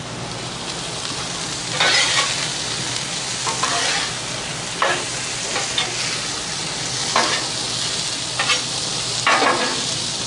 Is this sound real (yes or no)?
yes